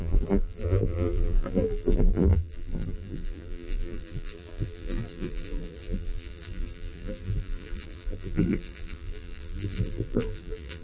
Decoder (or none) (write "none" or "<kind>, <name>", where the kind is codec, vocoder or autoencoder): vocoder, BigVGAN v2